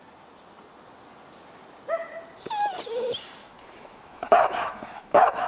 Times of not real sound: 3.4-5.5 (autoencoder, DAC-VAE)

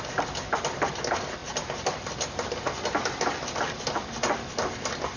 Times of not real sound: none

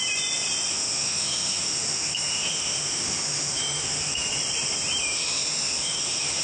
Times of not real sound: 0.7-4.3 (autoencoder, DAC-VAE); 5.0-6.4

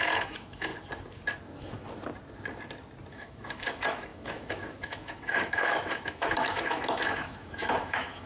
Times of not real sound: 0.0-0.7 (autoencoder, DAC-VAE); 3.1-8.3

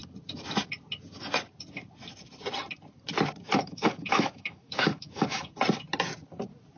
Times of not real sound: 3.5-5.5 (autoencoder, DAC-VAE)

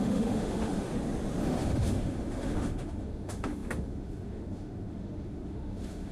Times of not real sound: 0.0-0.9 (autoencoder, DAC-VAE); 1.4-6.1

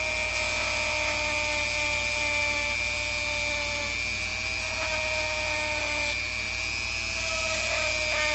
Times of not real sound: none

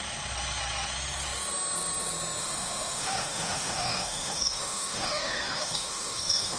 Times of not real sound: 2.4-6.6 (autoencoder, DAC-VAE)